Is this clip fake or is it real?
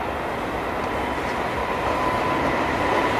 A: real